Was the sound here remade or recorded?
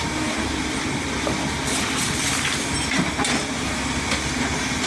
recorded